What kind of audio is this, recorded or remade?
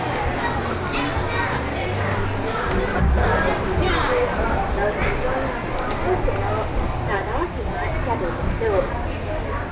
recorded